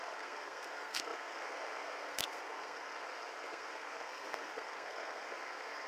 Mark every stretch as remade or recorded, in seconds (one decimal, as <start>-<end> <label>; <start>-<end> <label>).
0.0-5.9 remade